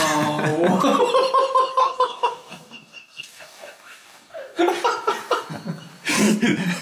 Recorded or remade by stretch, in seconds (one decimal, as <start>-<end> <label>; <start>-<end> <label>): 0.0-1.8 recorded; 1.8-4.6 remade; 4.6-6.8 recorded